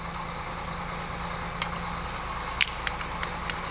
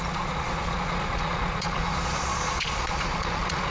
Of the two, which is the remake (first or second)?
second